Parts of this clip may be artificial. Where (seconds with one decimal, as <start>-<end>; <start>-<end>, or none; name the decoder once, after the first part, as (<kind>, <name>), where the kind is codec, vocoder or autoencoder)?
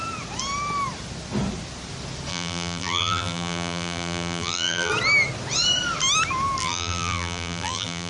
2.3-4.9 (vocoder, BigVGAN v2); 6.6-8.1